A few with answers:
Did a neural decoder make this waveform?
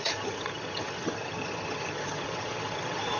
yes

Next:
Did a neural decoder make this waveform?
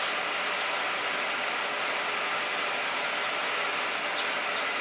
no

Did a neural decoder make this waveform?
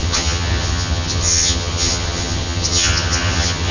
yes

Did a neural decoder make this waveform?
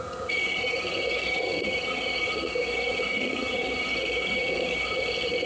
yes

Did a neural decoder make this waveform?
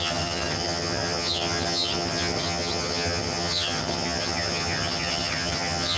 yes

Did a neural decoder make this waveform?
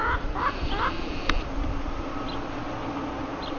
no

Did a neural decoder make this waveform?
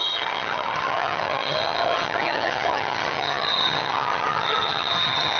yes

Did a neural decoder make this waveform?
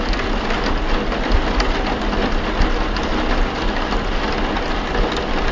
no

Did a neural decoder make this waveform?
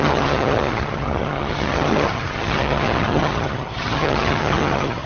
yes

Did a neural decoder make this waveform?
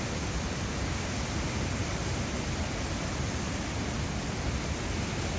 no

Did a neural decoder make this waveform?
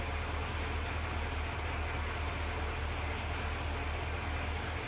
no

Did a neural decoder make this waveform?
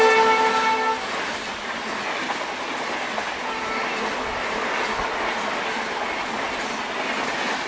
no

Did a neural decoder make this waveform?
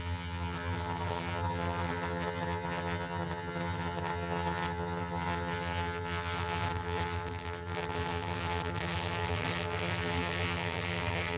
yes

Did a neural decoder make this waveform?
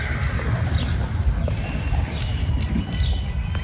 no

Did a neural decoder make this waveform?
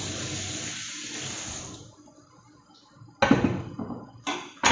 no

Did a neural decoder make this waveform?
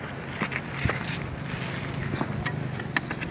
no